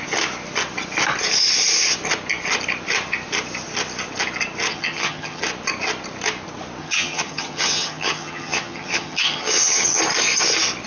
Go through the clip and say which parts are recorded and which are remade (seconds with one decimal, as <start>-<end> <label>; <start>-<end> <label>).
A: 0.0-4.7 recorded; 4.7-5.4 remade; 5.4-6.8 recorded; 6.8-10.0 remade; 10.0-10.9 recorded

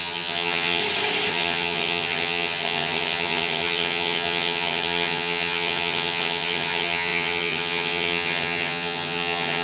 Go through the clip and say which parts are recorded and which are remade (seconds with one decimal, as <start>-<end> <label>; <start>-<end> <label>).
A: 0.0-0.8 remade; 0.8-1.3 recorded; 1.3-9.6 remade